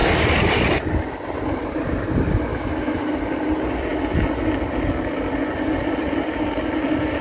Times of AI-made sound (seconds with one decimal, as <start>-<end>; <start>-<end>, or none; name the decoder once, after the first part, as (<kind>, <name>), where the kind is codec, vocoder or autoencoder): 2.5-3.1 (autoencoder, DAC-VAE)